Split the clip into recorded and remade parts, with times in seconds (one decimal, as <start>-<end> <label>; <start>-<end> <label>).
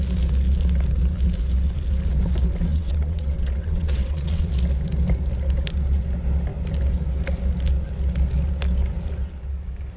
0.0-2.7 recorded; 2.7-4.5 remade; 4.5-10.0 recorded